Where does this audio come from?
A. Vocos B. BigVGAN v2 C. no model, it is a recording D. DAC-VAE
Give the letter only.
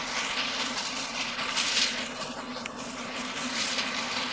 C